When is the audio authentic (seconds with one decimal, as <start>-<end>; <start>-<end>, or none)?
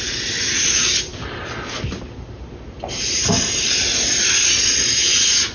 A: 0.0-5.5